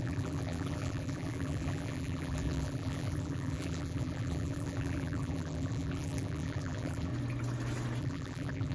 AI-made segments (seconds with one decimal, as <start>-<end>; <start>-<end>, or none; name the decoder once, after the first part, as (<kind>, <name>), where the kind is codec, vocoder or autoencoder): 0.0-7.1 (vocoder, BigVGAN v2); 8.0-8.7